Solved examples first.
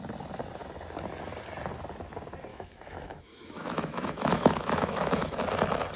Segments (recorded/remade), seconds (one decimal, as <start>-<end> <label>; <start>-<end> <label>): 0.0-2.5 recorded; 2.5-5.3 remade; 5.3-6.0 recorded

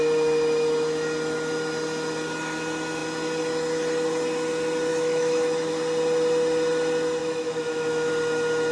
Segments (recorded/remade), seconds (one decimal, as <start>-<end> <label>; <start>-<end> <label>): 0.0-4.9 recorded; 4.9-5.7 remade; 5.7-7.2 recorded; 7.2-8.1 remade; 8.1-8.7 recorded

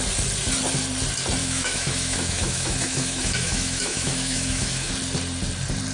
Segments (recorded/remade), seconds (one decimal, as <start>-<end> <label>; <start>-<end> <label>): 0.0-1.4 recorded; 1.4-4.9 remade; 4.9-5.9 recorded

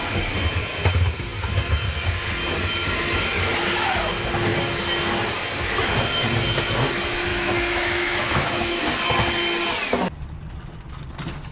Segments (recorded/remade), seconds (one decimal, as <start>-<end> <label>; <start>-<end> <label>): 0.0-7.3 recorded; 7.3-8.8 remade; 8.8-11.5 recorded